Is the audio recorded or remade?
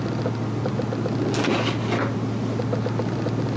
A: recorded